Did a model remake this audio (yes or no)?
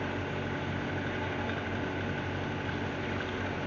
no